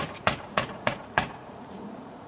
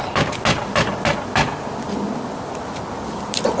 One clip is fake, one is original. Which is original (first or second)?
second